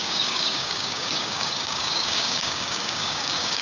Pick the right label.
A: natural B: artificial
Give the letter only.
B